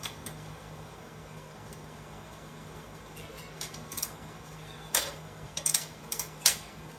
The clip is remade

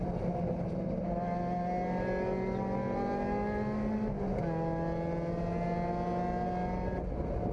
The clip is recorded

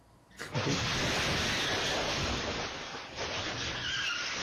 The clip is recorded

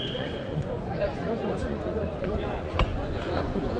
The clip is remade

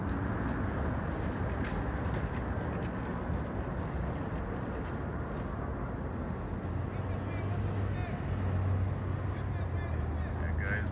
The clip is recorded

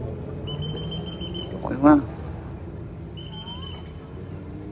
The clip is recorded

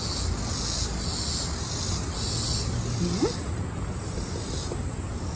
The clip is recorded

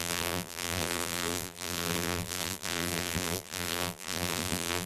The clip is remade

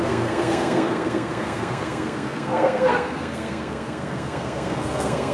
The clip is remade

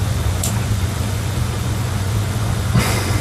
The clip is remade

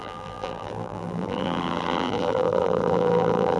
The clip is remade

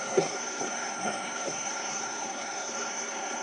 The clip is remade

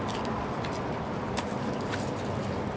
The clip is recorded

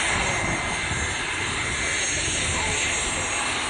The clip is recorded